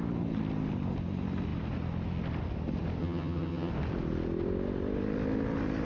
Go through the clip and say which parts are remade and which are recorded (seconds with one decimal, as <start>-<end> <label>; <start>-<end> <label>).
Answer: 0.0-3.0 recorded; 3.0-3.7 remade; 3.7-5.8 recorded